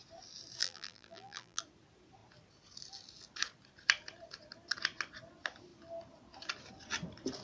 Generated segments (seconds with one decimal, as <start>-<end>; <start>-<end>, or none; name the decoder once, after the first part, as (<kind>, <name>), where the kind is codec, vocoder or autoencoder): 0.6-1.6 (vocoder, BigVGAN v2)